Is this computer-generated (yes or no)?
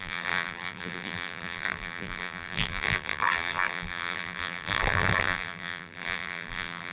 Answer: yes